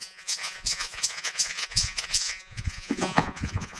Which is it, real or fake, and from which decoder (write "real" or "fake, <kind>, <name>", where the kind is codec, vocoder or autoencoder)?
fake, vocoder, Vocos